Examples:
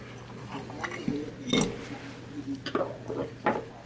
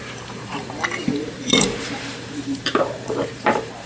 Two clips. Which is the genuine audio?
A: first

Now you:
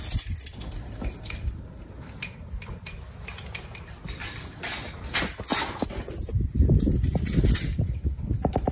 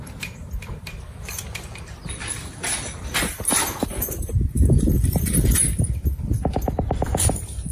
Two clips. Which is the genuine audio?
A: first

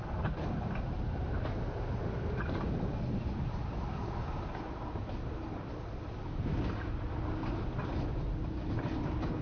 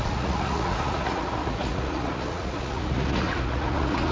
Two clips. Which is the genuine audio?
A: first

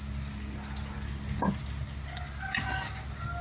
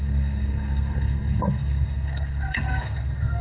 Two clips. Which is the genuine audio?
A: first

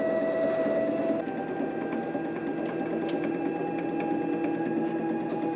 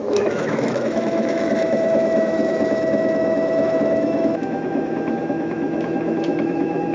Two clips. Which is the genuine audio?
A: first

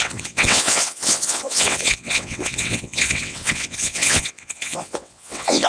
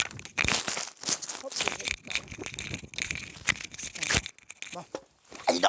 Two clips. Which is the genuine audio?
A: second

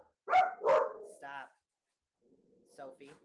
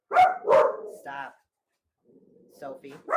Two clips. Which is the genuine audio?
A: first